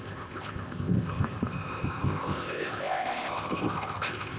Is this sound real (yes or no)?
no